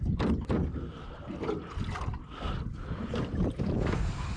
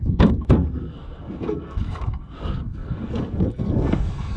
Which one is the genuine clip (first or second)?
first